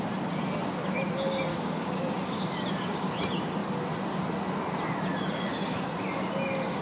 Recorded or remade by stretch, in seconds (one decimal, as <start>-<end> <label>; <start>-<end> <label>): 0.0-1.5 recorded; 1.5-2.5 remade; 2.5-6.8 recorded